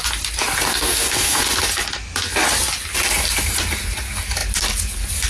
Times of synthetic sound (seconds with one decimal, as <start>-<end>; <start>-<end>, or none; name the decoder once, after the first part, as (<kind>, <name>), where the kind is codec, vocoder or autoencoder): 0.7-1.4 (codec, DAC)